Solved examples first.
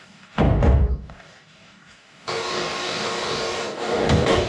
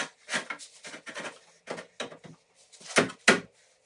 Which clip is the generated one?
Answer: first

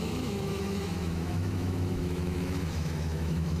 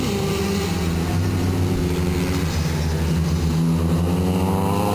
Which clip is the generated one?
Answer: first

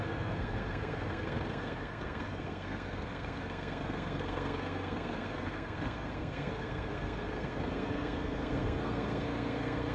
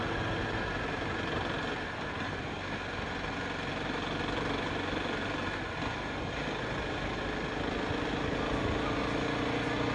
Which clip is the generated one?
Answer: first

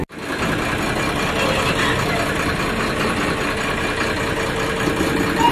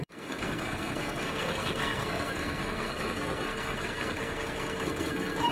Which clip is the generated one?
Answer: second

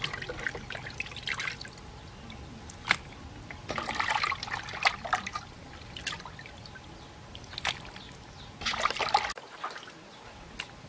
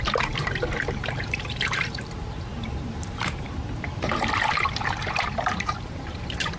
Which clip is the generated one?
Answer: second